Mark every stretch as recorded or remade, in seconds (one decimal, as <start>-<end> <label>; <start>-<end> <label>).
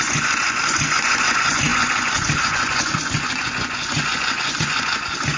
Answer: 0.0-5.4 remade